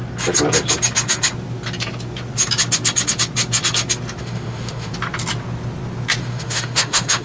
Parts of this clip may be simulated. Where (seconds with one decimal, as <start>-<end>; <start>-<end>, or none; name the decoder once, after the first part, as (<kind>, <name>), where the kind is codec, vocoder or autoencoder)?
4.2-4.9 (autoencoder, DAC-VAE); 6.2-7.2